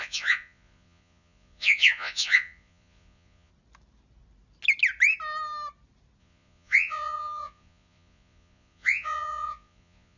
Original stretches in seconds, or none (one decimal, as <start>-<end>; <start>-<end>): 3.5-6.2